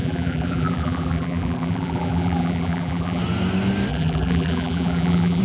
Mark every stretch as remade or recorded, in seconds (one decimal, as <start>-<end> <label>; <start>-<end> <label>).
0.0-3.2 remade; 3.2-3.9 recorded; 3.9-5.4 remade